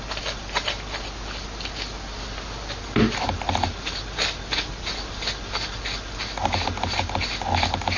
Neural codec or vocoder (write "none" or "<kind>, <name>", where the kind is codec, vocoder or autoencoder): none